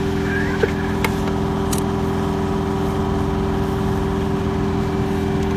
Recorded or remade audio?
recorded